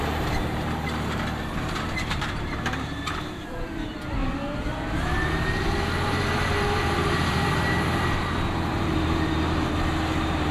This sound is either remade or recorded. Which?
remade